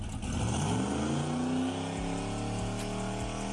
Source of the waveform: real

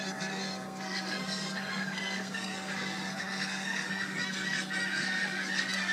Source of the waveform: fake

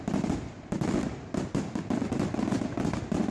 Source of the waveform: real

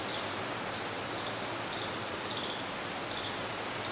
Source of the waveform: real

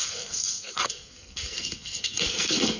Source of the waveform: fake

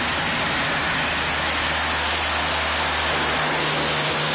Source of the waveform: real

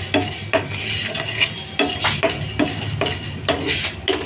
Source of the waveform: real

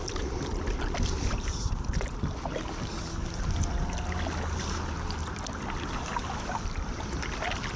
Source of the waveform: real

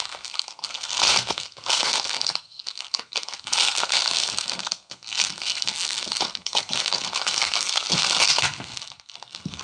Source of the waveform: fake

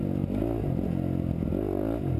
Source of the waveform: real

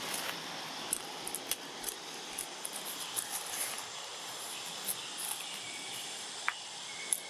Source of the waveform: real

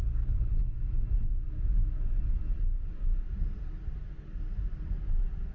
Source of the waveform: real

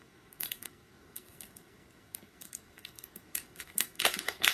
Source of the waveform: fake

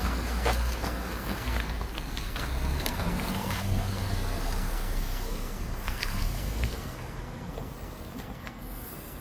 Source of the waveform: fake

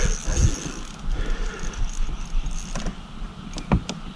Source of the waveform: real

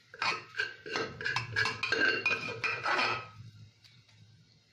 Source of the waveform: real